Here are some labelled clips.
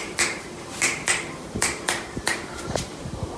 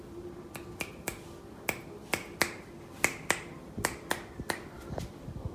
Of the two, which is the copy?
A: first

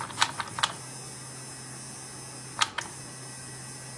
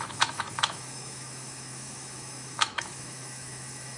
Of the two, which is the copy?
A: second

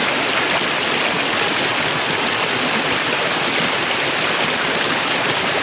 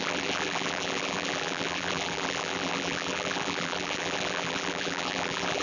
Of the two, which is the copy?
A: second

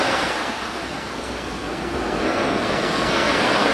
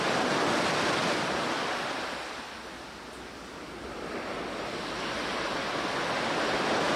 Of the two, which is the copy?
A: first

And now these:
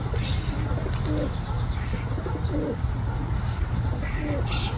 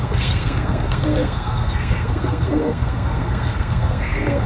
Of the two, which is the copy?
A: second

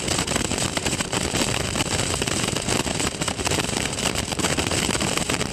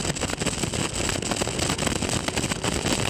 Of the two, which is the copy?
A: first